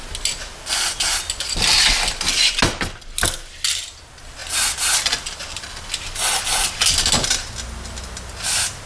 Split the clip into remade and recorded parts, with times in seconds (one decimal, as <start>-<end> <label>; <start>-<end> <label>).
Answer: 0.0-8.9 recorded